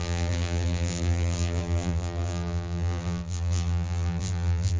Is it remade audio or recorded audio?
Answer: remade